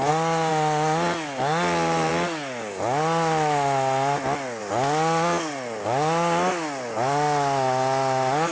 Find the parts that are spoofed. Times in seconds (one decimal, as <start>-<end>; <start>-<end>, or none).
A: none